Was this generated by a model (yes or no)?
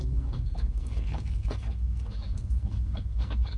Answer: yes